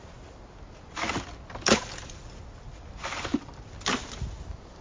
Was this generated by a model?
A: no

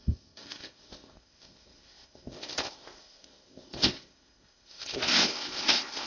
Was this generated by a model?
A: yes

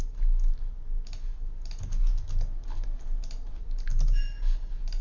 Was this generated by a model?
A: no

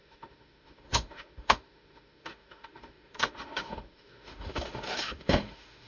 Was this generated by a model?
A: yes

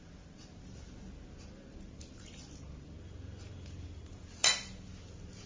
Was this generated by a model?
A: no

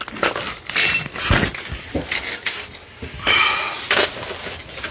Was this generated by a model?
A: no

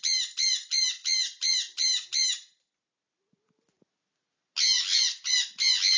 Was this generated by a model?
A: no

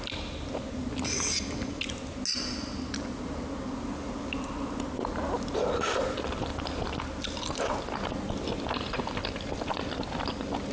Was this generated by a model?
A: no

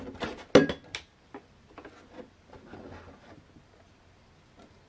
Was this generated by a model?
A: no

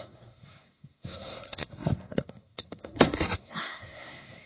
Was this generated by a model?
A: yes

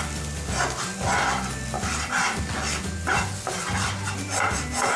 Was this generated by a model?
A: no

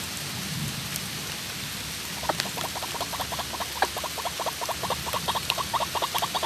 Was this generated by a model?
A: no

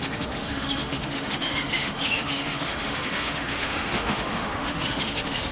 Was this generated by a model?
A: yes